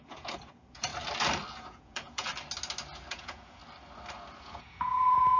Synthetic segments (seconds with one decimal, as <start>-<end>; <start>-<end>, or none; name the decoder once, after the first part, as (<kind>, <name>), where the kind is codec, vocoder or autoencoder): 0.0-0.9 (vocoder, Vocos); 1.5-2.3; 3.1-3.6; 4.4-5.4